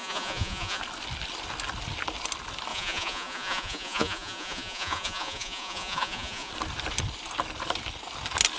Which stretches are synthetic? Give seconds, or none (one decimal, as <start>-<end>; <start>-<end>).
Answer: 0.0-0.8; 2.7-6.5